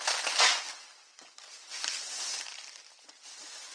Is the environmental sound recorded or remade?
recorded